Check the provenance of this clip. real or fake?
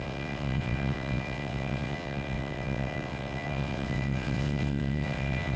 fake